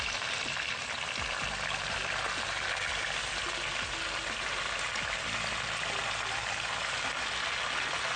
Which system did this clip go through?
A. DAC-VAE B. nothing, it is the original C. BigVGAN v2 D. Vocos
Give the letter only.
B